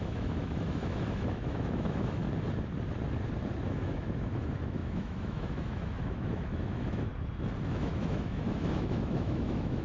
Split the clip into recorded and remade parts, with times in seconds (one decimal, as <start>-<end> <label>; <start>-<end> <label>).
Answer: 0.0-2.2 remade; 2.2-3.6 recorded; 3.6-7.1 remade; 7.1-7.7 recorded; 7.7-9.8 remade

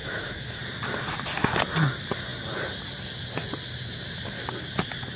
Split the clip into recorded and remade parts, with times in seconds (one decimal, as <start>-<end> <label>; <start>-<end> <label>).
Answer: 0.0-0.6 remade; 0.6-5.2 recorded

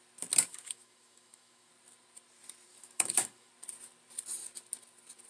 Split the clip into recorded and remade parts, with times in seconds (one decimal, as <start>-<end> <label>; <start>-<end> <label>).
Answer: 0.0-0.5 recorded; 0.5-1.7 remade; 1.7-2.7 recorded; 2.7-3.5 remade; 3.5-5.3 recorded

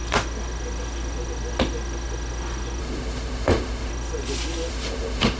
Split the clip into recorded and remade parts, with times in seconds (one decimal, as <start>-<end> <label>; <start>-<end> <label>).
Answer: 0.0-2.8 recorded; 2.8-3.9 remade; 3.9-4.7 recorded; 4.7-5.4 remade

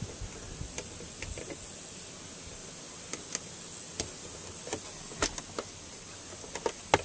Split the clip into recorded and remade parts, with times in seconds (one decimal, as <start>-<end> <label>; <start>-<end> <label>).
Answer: 0.0-7.0 recorded